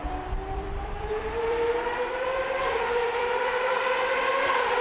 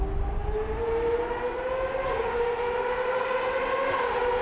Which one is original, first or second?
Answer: second